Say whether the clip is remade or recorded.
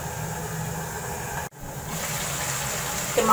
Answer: recorded